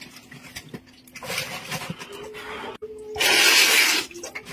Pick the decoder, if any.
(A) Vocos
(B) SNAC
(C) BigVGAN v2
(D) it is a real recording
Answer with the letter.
D